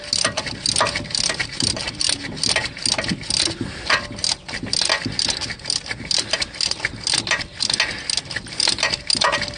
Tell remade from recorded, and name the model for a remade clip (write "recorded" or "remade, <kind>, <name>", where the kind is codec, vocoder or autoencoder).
recorded